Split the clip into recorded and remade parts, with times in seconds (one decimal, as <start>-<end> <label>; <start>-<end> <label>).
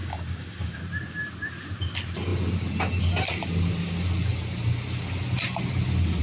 0.0-0.8 remade; 0.8-6.2 recorded